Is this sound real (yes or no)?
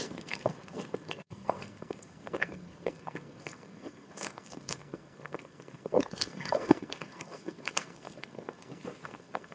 no